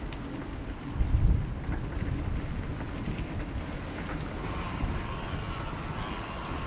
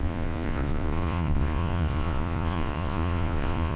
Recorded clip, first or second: first